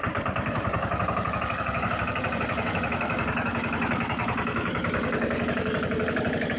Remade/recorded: remade